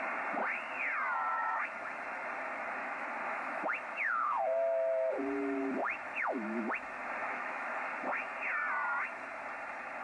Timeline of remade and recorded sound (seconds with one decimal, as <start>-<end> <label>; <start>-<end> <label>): 0.0-1.3 recorded; 1.3-2.0 remade; 2.0-2.8 recorded; 2.8-5.2 remade; 5.2-5.8 recorded; 5.8-6.7 remade; 6.7-7.2 recorded; 7.2-7.9 remade; 7.9-10.0 recorded